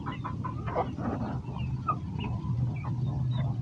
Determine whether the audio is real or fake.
real